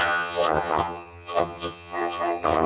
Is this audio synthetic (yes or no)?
yes